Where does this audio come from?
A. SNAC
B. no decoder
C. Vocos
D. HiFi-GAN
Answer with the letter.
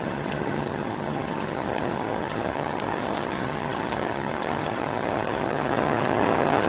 D